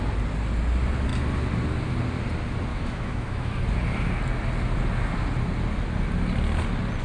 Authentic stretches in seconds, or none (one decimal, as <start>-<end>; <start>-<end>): 0.0-2.7; 3.5-7.0